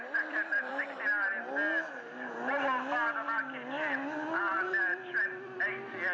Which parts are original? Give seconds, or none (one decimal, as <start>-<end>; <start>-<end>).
0.7-4.4